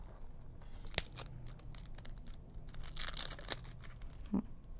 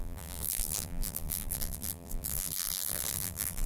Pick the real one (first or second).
first